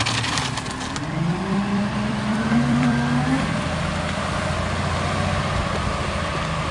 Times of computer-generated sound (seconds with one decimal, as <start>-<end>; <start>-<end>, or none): 1.3-3.1